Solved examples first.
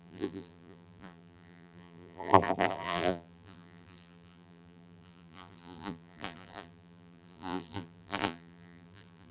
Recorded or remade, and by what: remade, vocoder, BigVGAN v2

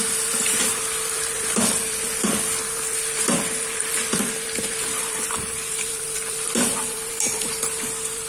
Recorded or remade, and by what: remade, vocoder, BigVGAN v2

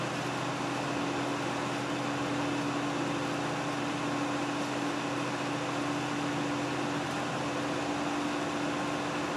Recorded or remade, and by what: recorded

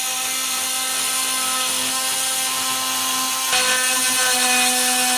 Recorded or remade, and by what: recorded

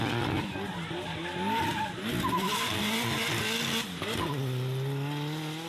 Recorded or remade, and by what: recorded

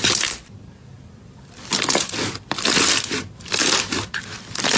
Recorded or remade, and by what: remade, vocoder, BigVGAN v2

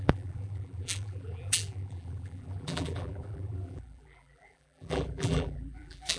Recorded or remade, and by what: remade, vocoder, BigVGAN v2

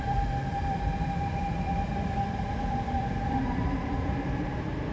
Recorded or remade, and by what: remade, vocoder, BigVGAN v2